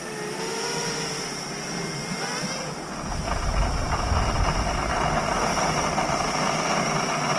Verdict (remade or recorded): recorded